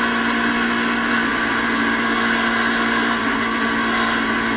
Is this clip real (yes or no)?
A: yes